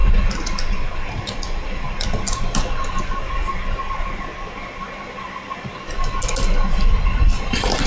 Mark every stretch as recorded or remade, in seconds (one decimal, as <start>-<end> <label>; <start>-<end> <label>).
0.0-4.3 remade; 4.3-6.7 recorded; 6.7-7.9 remade